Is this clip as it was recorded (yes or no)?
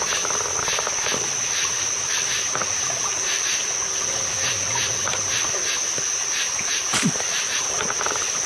yes